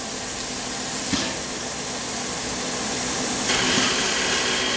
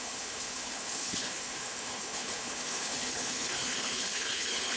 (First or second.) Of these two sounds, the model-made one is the second